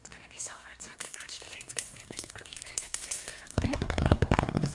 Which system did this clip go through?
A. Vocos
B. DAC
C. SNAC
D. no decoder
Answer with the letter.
C